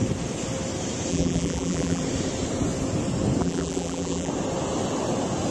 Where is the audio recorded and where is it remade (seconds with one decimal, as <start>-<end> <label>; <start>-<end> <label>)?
0.0-1.1 recorded; 1.1-2.0 remade; 2.0-3.4 recorded; 3.4-4.3 remade; 4.3-5.5 recorded

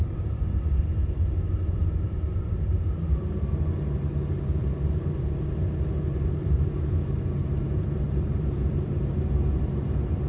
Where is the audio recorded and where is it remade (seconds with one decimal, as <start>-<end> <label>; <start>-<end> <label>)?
0.0-1.0 remade; 1.0-1.9 recorded; 1.9-10.3 remade

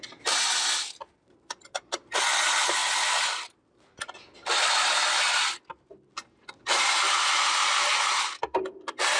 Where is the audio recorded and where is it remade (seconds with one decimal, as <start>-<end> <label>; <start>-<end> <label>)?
0.0-9.2 recorded

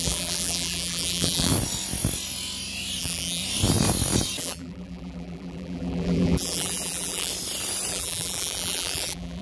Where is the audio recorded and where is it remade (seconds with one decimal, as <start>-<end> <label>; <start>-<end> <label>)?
0.0-1.5 remade; 1.5-3.0 recorded; 3.0-3.4 remade; 3.4-4.4 recorded; 4.4-7.3 remade; 7.3-7.9 recorded; 7.9-9.4 remade

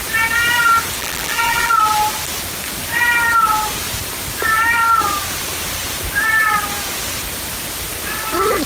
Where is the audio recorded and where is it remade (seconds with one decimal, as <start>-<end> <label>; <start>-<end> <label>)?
0.0-1.0 recorded; 1.0-1.7 remade; 1.7-8.7 recorded

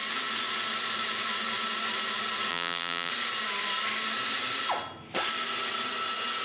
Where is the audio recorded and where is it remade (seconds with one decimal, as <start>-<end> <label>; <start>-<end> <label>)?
0.0-2.5 recorded; 2.5-3.1 remade; 3.1-6.4 recorded